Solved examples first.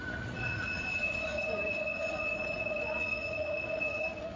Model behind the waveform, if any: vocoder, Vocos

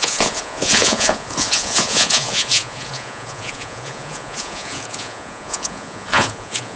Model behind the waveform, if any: vocoder, Vocos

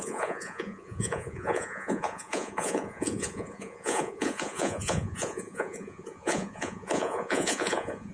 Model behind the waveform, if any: vocoder, Vocos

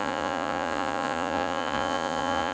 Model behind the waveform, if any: vocoder, Vocos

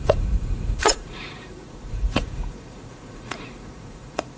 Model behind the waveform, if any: vocoder, Vocos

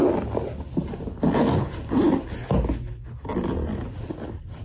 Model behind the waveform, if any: none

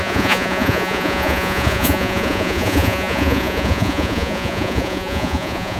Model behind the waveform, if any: vocoder, Vocos